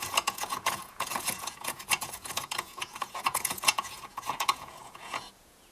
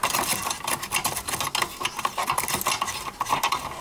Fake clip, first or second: first